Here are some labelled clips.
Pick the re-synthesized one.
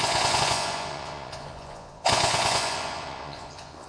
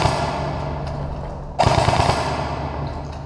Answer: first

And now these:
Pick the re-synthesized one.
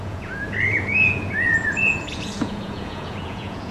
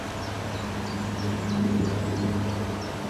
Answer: first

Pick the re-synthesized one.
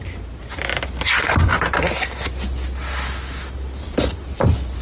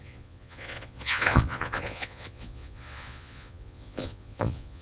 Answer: second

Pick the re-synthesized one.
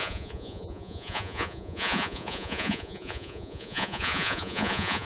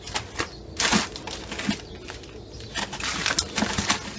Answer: first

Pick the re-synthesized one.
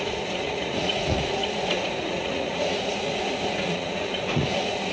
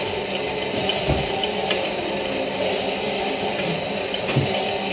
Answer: first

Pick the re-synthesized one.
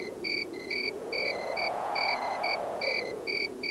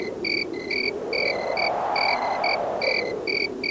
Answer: first